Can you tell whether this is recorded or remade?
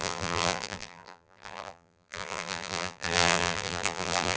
remade